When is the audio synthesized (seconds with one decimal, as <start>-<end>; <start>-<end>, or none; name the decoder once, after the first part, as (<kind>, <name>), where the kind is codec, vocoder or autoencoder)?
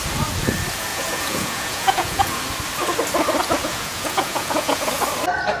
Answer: 0.9-2.4 (vocoder, Vocos); 3.6-4.9